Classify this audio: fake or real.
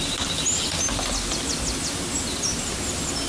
real